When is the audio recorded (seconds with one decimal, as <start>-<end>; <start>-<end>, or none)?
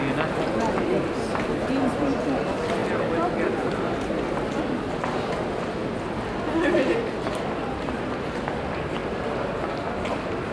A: 0.0-10.5